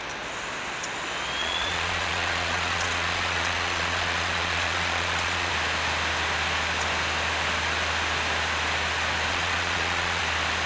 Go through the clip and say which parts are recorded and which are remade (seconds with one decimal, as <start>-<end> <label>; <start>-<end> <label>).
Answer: 0.0-1.4 recorded; 1.4-5.5 remade; 5.5-9.3 recorded; 9.3-10.2 remade; 10.2-10.7 recorded